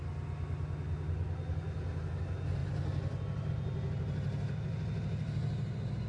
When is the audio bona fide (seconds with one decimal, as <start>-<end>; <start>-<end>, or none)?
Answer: 0.0-6.1